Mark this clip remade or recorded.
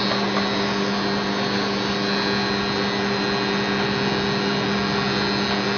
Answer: recorded